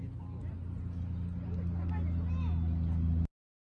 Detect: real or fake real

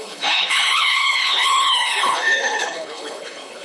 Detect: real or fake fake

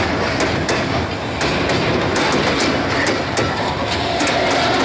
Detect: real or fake real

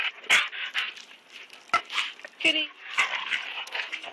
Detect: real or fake real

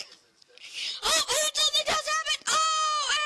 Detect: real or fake real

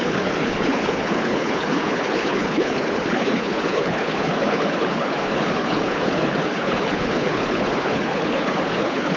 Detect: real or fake fake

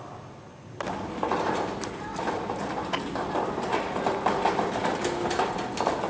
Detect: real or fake real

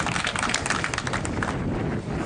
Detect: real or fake real